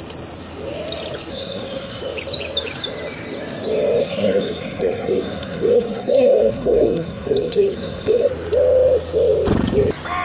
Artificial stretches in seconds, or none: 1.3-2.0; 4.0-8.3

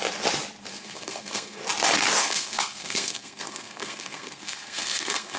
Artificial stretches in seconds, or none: 0.7-1.6; 2.2-5.4

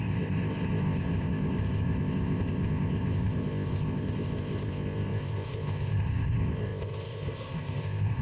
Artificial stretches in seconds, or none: 0.0-8.2